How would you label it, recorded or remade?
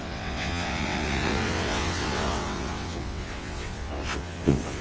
remade